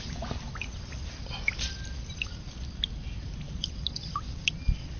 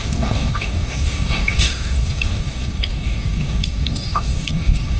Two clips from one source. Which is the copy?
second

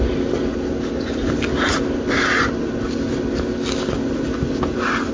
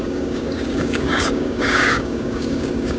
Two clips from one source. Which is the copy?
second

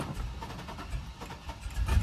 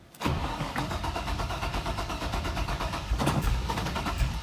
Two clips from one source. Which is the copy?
second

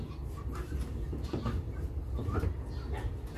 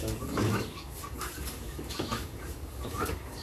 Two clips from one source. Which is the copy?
second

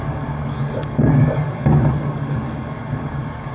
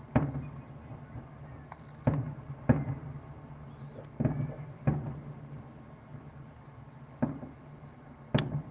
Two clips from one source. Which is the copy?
first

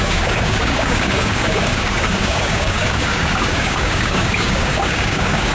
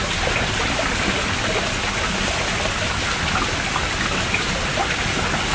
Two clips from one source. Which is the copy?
first